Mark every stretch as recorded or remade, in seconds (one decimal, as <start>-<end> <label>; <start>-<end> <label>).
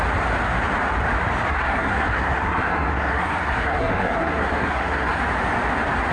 0.0-1.5 recorded; 1.5-5.2 remade; 5.2-6.1 recorded